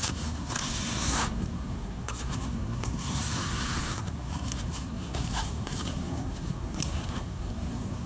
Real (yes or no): no